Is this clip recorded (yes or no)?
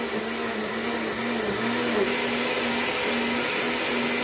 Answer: yes